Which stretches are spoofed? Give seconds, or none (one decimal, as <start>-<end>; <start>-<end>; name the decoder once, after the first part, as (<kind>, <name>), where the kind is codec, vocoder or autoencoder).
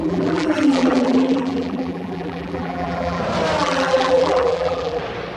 0.0-3.2 (vocoder, BigVGAN v2); 3.6-5.0